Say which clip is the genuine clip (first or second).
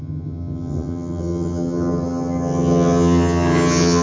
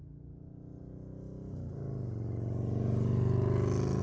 second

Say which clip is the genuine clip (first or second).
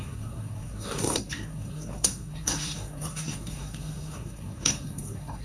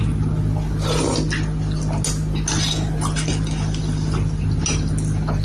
second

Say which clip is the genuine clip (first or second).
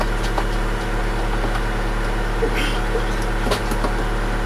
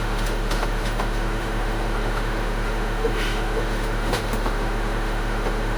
first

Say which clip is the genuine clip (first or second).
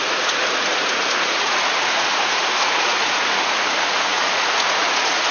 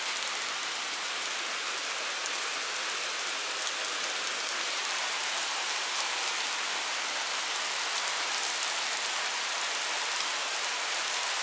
second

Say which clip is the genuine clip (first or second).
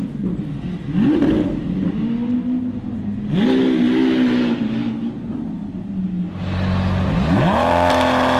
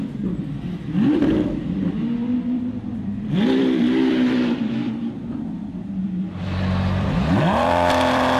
first